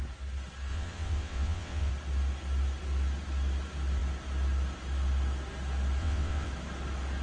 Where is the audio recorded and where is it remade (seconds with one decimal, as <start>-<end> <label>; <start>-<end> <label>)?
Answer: 0.0-0.7 recorded; 0.7-1.9 remade; 1.9-6.0 recorded; 6.0-6.5 remade; 6.5-7.2 recorded

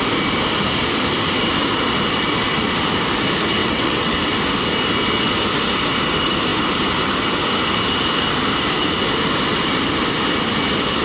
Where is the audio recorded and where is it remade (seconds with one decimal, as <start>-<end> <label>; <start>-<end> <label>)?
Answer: 0.0-3.6 recorded; 3.6-4.2 remade; 4.2-11.0 recorded

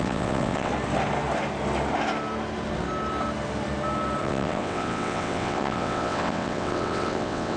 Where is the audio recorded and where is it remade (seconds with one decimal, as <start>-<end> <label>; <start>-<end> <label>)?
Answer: 0.0-0.7 remade; 0.7-4.2 recorded; 4.2-7.6 remade